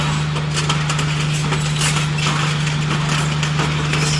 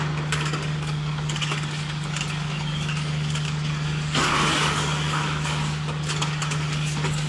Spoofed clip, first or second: second